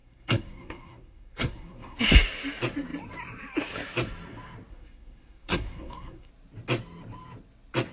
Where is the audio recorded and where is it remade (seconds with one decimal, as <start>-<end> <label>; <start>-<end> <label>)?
0.0-2.0 remade; 2.0-4.7 recorded; 4.7-6.3 remade; 6.3-7.9 recorded